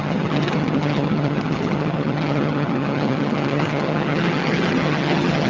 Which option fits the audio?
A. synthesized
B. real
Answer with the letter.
A